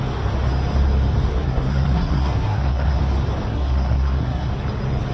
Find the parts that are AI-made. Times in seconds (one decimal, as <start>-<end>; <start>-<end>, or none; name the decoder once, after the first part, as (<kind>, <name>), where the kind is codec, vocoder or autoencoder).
1.3-3.0 (codec, SNAC); 3.5-4.5